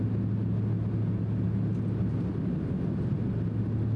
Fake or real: real